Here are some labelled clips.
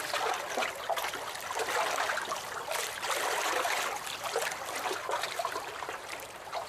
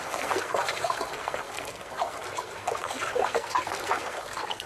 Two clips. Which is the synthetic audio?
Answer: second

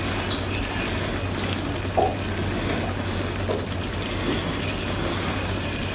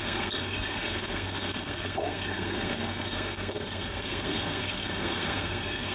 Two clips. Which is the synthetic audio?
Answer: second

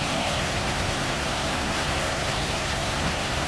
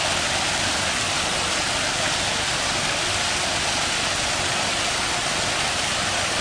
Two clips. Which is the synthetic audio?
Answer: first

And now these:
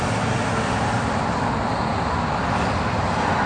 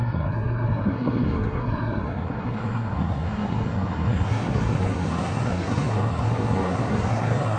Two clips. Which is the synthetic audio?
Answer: second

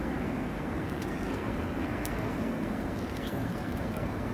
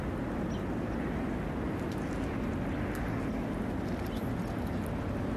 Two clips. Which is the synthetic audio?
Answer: first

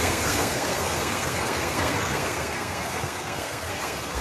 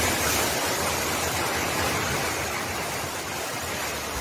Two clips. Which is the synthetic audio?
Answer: first